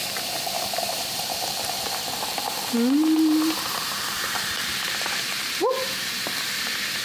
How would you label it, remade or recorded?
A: remade